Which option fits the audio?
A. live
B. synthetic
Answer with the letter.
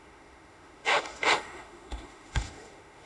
B